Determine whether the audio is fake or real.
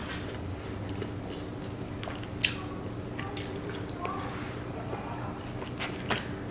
real